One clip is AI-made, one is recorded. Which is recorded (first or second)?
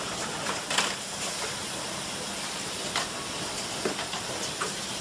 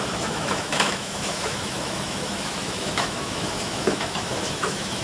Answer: first